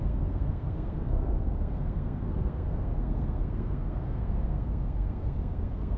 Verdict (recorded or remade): remade